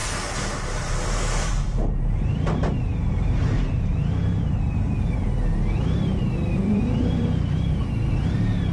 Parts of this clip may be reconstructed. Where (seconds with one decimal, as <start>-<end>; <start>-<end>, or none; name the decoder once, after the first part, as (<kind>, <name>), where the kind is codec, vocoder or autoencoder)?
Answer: 0.0-5.2 (vocoder, BigVGAN v2); 6.2-7.8